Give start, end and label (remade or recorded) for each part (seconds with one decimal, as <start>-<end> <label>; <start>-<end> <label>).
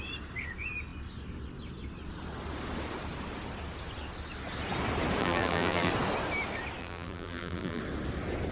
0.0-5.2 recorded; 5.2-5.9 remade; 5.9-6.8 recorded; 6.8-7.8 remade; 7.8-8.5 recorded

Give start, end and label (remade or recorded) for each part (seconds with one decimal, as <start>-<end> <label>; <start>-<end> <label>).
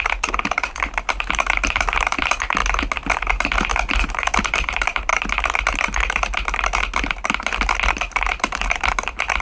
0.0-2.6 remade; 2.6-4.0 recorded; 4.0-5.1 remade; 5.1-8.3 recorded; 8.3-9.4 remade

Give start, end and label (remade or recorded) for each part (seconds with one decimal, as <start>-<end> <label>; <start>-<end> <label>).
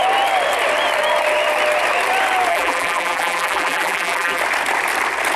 0.0-2.5 recorded; 2.5-4.4 remade; 4.4-5.4 recorded